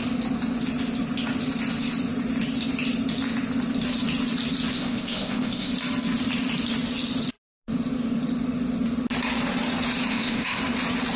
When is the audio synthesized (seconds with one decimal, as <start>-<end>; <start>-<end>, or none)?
4.7-5.7; 10.1-10.6